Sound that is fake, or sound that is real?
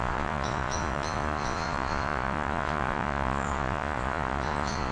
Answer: fake